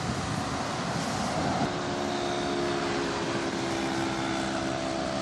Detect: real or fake real